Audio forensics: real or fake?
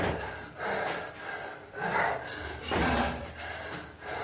real